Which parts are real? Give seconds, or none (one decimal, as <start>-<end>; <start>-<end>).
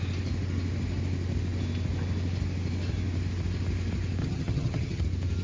0.0-4.2; 5.0-5.4